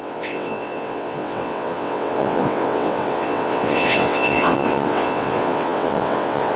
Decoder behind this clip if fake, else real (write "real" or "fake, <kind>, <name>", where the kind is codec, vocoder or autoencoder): fake, vocoder, WaveNeXt